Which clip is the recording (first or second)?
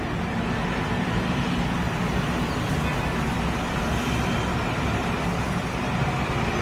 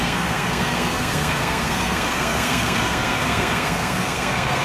first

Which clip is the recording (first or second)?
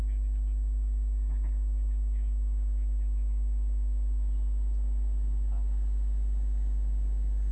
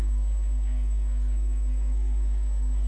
first